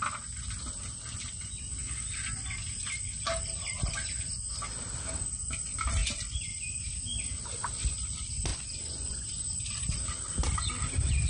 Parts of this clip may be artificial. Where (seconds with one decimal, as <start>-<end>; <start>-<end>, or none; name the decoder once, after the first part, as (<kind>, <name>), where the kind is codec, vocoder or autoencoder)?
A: 8.5-9.5 (vocoder, Vocos)